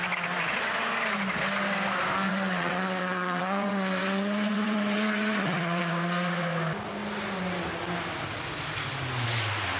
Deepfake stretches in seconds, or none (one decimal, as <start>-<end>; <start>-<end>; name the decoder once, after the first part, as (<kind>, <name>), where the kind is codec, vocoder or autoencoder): 2.3-5.8 (vocoder, WaveNeXt)